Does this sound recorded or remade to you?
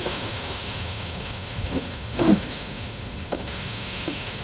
remade